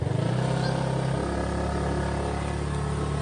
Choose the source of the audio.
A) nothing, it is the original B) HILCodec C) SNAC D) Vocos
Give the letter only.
A